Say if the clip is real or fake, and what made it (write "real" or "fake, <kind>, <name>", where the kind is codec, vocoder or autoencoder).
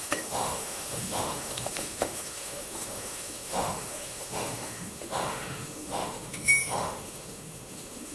fake, autoencoder, DAC-VAE